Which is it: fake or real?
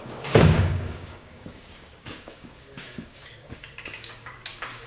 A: fake